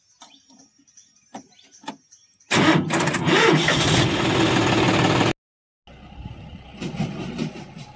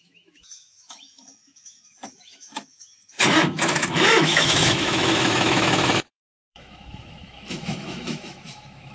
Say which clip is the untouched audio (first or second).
first